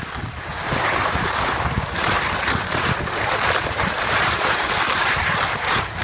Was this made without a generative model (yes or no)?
no